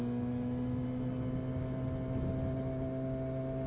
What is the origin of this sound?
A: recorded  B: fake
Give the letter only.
A